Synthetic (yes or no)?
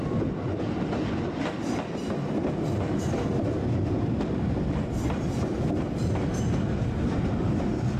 no